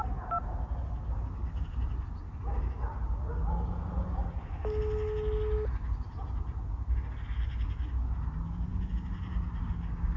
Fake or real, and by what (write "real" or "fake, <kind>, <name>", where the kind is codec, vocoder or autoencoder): real